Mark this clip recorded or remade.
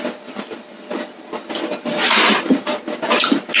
recorded